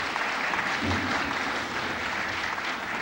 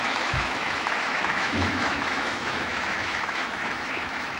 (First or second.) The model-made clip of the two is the second